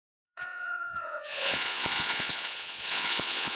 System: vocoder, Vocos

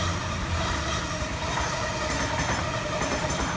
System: none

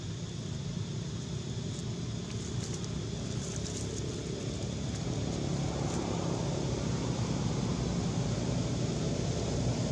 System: none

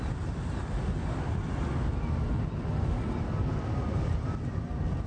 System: none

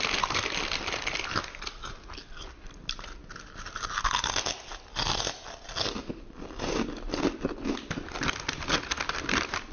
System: none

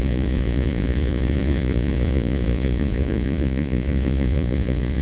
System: vocoder, Vocos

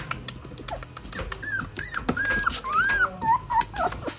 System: none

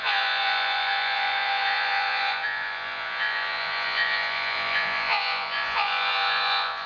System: vocoder, Vocos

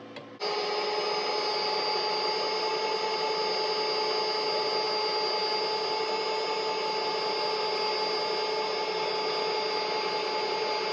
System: none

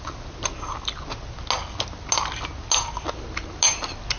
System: none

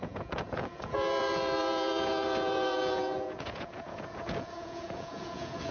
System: vocoder, Vocos